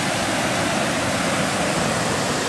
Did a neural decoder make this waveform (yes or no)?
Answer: no